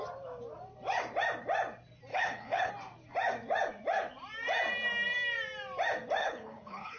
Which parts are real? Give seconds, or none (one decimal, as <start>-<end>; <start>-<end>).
0.0-2.1; 2.7-6.2